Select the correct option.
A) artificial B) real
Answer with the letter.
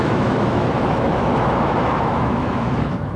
A